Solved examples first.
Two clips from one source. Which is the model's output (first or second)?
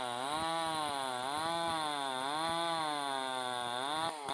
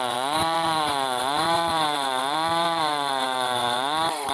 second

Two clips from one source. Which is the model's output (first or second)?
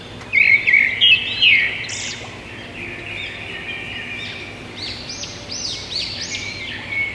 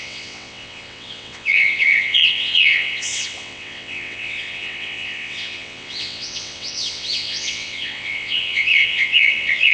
second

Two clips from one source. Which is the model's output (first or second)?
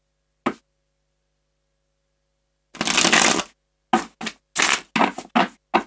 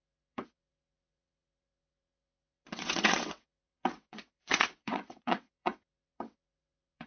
second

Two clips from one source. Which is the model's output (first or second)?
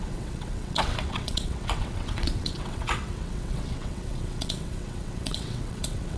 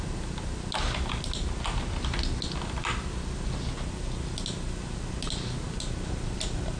first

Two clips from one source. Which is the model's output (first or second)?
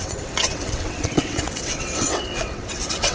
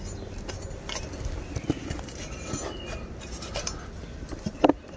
first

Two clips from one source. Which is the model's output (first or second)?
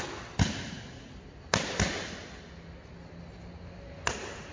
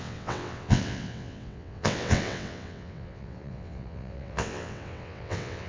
second